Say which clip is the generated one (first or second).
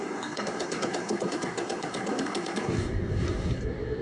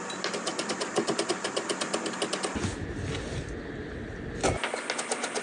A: first